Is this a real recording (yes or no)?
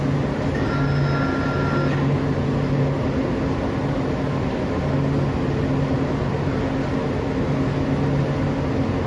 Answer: yes